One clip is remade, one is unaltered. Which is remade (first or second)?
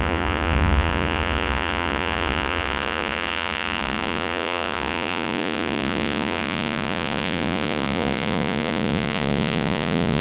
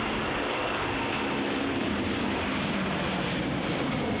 first